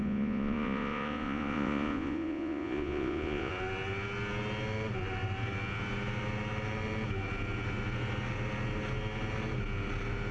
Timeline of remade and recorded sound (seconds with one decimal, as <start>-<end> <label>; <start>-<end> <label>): 0.0-3.5 remade; 3.5-10.3 recorded